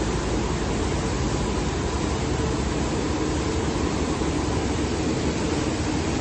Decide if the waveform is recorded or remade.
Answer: recorded